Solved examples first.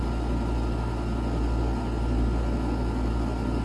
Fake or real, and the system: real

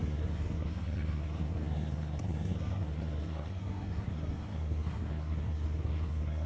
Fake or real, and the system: fake, codec, SNAC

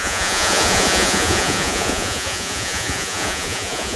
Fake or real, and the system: fake, vocoder, Vocos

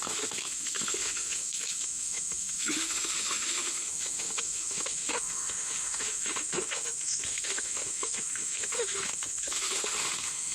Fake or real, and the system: fake, autoencoder, DAC-VAE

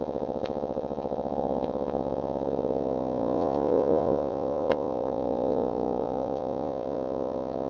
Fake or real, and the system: fake, vocoder, Vocos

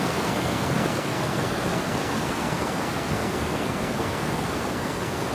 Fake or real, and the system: fake, codec, SNAC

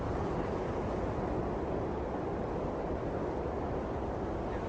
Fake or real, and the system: real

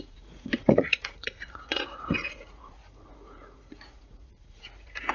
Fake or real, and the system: fake, vocoder, Vocos